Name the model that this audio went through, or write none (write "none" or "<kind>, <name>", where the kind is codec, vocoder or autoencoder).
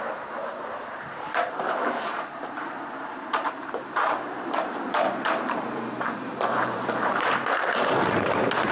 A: vocoder, BigVGAN v2